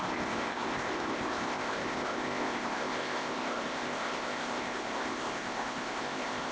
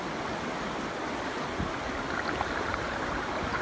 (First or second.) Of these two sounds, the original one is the second